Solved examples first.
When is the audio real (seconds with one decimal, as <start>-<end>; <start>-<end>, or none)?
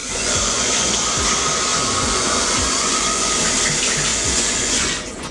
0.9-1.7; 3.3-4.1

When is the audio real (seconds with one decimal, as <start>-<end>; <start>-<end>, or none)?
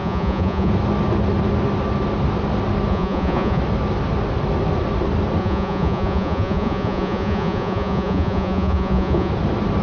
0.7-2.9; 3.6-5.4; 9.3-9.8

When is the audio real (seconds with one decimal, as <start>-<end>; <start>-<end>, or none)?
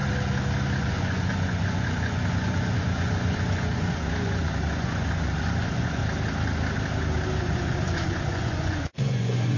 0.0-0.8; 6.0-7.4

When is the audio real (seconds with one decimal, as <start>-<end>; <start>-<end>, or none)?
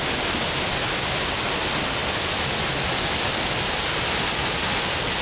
0.0-5.2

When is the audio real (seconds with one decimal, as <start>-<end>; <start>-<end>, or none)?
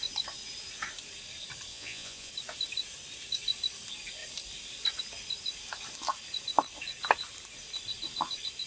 0.0-1.7; 2.3-8.7